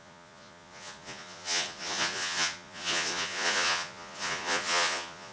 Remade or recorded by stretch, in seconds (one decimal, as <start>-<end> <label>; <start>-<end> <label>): 0.0-5.3 remade